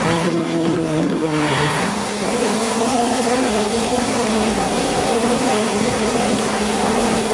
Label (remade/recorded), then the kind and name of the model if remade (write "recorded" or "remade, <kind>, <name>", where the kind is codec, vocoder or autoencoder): remade, codec, SNAC